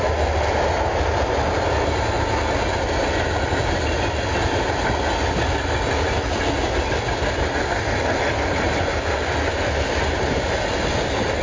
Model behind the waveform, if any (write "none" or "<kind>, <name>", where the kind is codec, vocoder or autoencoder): none